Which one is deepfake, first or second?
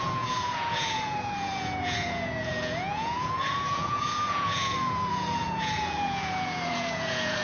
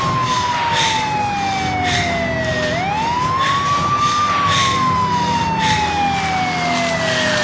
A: first